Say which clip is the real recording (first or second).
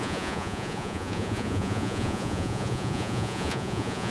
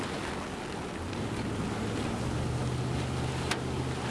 second